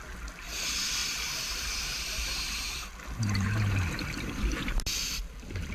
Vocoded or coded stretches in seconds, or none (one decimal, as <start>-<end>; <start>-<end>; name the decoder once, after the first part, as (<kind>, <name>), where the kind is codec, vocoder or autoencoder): 1.0-2.9 (vocoder, BigVGAN v2)